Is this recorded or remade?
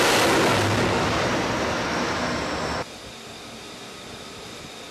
recorded